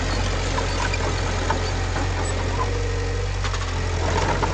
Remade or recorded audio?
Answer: recorded